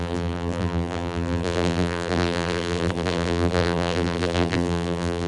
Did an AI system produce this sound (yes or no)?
yes